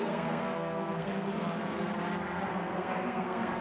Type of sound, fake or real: fake